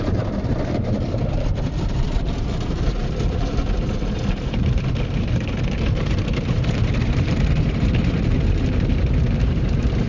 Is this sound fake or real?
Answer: fake